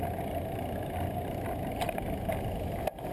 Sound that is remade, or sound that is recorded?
recorded